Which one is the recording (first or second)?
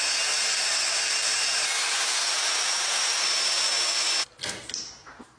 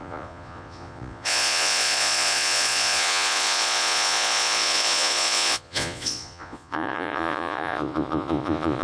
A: first